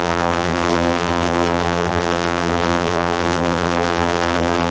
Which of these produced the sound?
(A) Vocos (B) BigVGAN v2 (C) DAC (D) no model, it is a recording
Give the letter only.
B